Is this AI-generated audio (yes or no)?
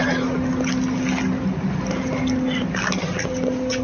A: no